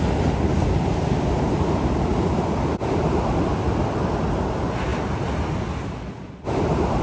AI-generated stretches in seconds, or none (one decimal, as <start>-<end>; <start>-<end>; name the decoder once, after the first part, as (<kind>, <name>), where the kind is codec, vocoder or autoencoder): none